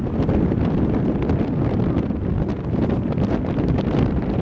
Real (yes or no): yes